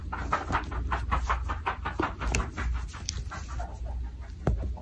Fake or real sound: real